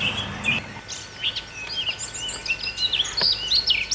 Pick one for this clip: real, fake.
real